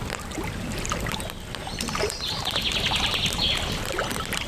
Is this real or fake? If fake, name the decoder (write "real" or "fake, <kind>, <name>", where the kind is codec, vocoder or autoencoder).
real